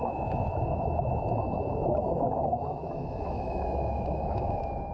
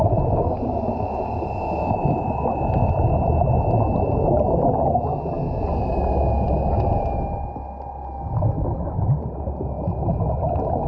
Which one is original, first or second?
second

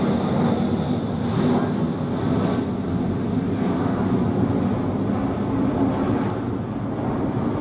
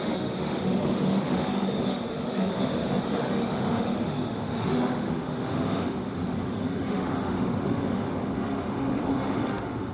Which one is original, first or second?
first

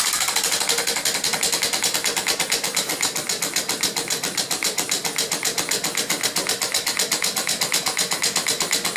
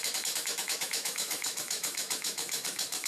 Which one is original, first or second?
first